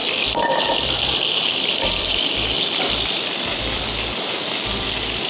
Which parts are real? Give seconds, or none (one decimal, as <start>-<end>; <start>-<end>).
0.0-5.3

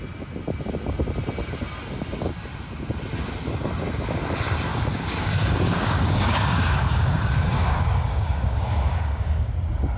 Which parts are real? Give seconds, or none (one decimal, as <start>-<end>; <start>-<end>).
0.0-4.7; 9.5-10.0

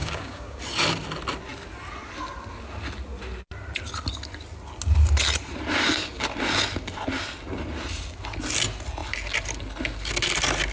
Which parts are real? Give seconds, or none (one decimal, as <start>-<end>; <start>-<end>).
0.6-10.7

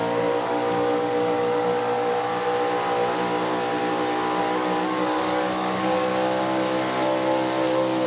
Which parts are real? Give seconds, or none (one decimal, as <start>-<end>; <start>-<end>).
2.3-4.4; 6.1-8.1